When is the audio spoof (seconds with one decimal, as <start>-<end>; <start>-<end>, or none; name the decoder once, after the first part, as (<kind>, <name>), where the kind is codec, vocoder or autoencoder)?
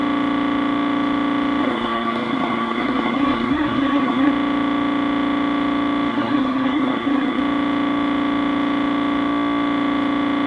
1.6-4.3 (codec, SNAC); 6.1-7.4